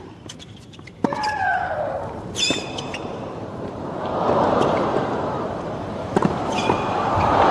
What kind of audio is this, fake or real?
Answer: fake